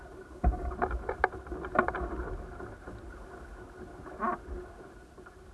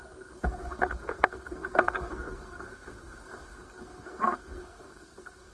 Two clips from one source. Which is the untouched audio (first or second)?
first